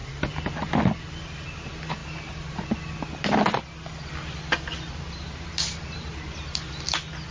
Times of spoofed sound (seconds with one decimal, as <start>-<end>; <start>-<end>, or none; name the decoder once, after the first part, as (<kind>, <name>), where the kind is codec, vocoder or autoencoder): none